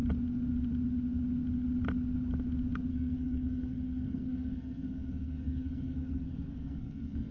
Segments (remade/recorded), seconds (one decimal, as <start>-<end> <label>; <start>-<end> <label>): 0.0-2.9 recorded; 2.9-7.3 remade